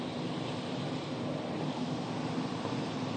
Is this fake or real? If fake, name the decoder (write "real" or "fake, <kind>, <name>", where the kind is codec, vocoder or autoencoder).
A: real